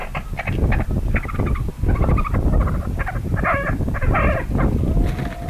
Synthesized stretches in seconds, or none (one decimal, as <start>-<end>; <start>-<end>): 0.0-1.4